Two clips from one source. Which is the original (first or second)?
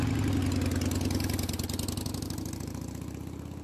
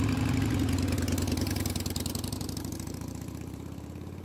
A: first